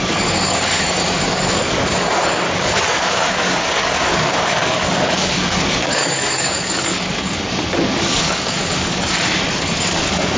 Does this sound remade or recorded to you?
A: remade